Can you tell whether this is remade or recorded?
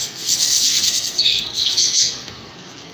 remade